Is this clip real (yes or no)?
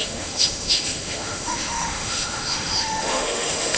no